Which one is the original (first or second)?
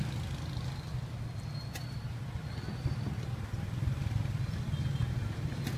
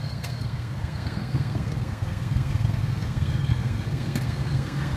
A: first